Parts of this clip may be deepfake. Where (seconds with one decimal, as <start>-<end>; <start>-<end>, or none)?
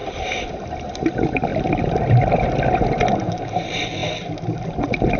0.0-0.9; 1.5-3.1